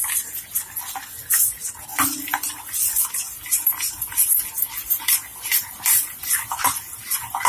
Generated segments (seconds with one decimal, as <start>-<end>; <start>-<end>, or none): none